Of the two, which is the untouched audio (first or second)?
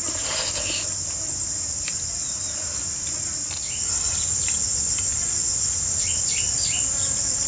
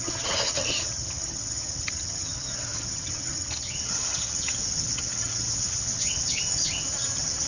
first